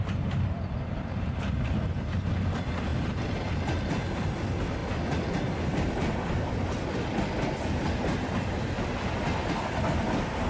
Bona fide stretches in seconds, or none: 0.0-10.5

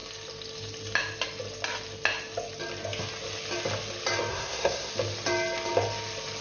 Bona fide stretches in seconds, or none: 0.0-4.3; 4.9-6.4

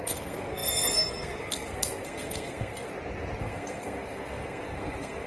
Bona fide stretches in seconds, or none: 2.9-3.4